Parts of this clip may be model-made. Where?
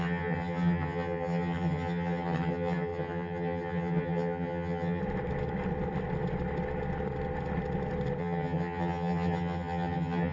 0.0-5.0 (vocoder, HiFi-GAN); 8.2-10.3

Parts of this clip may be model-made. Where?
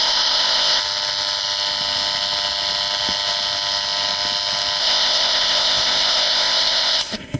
0.0-0.8 (codec, ZipCodec); 4.8-7.4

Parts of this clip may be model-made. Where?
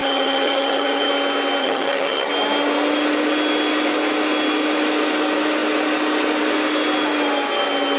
0.0-1.1 (vocoder, HiFi-GAN); 1.6-2.3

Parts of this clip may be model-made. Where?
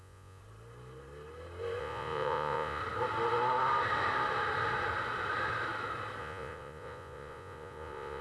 0.0-0.4 (vocoder, Vocos); 1.8-2.8; 6.2-8.2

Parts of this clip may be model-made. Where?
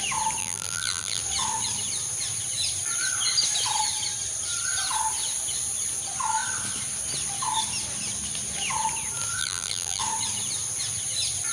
0.4-1.2 (vocoder, BigVGAN v2); 9.4-10.0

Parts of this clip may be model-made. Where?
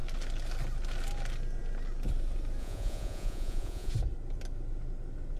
2.6-3.9 (vocoder, Vocos)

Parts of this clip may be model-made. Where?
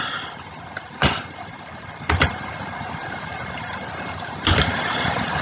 0.0-5.4 (vocoder, BigVGAN v2)